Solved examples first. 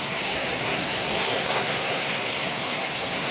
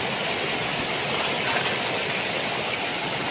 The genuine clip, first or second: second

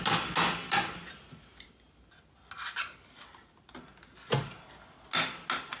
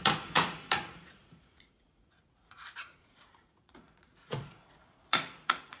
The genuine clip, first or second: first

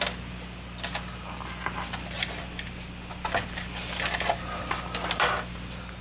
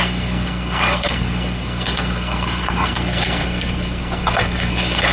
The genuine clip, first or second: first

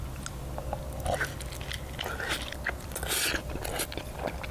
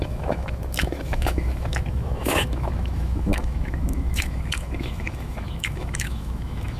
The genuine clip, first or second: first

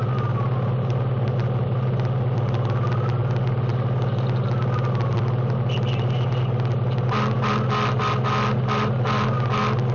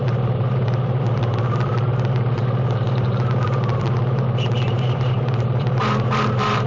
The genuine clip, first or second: first